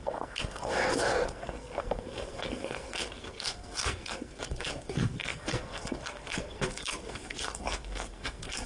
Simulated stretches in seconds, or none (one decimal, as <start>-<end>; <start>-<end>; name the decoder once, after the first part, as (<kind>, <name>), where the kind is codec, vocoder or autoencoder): 0.0-8.7 (codec, SNAC)